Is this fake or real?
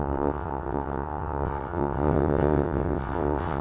fake